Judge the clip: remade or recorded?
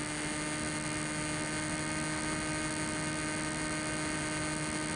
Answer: recorded